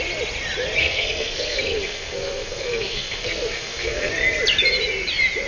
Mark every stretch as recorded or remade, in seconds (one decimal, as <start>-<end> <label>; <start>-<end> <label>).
0.0-0.8 recorded; 0.8-4.1 remade; 4.1-5.5 recorded